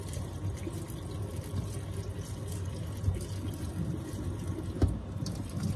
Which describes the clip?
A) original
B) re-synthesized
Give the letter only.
A